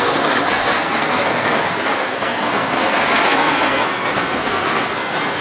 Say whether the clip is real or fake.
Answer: fake